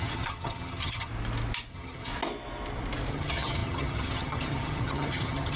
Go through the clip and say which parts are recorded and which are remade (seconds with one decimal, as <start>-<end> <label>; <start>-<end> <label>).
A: 0.0-1.1 remade; 1.1-1.7 recorded; 1.7-2.1 remade; 2.1-3.1 recorded; 3.1-5.6 remade